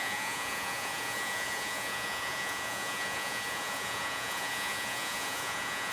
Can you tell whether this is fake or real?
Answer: fake